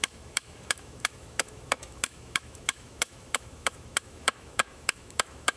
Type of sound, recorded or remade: remade